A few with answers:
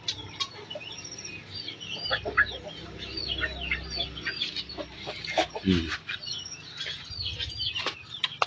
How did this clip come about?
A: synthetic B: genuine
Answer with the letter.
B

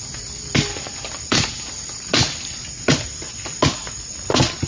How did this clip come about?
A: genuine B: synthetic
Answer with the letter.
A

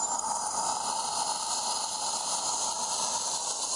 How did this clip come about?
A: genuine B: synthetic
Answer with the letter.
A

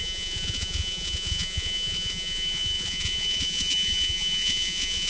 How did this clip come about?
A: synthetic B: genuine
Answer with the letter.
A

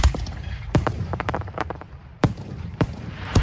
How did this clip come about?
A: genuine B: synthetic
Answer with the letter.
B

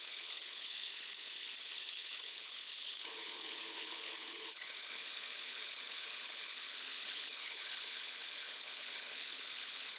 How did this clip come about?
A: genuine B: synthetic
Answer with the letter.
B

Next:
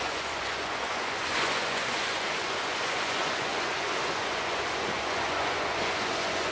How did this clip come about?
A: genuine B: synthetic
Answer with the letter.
B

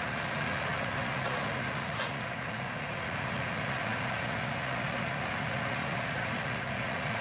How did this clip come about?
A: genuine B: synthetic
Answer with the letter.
B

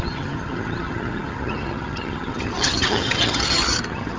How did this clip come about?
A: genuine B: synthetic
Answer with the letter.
B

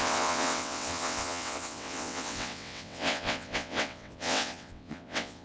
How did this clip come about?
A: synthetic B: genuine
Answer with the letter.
A